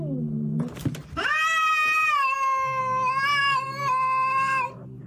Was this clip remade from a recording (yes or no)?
no